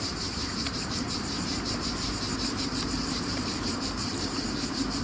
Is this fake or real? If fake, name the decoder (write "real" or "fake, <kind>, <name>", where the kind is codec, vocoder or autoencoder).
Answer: fake, vocoder, BigVGAN v2